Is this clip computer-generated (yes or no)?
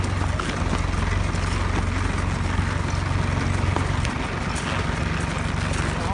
no